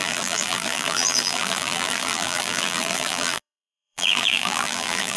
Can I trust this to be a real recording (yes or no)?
no